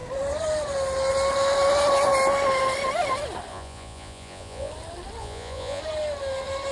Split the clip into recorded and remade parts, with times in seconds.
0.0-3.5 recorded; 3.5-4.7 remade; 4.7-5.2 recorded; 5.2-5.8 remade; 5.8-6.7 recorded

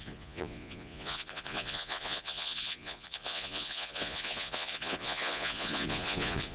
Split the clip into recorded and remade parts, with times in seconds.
0.0-6.5 remade

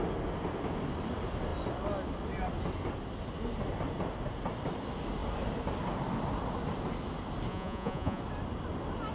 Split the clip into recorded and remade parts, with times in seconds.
0.0-7.5 recorded; 7.5-8.2 remade; 8.2-9.1 recorded